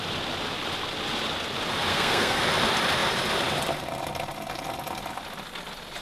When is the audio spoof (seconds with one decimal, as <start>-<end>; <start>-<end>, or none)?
1.9-2.4